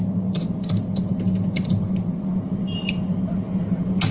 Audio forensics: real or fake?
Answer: real